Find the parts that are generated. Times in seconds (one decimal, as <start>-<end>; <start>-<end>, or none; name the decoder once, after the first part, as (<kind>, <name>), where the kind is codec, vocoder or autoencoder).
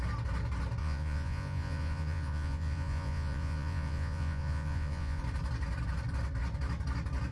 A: 0.8-5.2 (vocoder, Vocos)